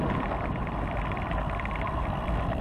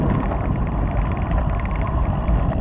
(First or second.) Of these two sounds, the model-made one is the second